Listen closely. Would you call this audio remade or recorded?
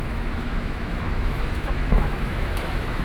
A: remade